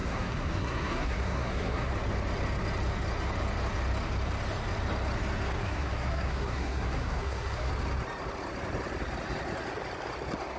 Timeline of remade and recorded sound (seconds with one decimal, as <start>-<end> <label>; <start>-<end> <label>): 0.0-1.9 remade; 1.9-5.6 recorded; 5.6-7.7 remade; 7.7-10.6 recorded